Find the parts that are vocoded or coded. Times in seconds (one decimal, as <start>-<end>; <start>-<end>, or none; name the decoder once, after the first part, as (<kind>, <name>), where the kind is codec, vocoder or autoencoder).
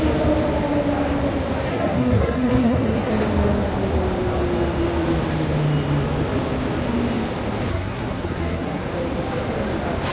1.7-3.1 (codec, SNAC); 7.7-8.8